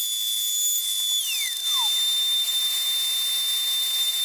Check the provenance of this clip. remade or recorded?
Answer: recorded